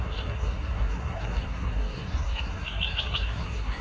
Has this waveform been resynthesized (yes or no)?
yes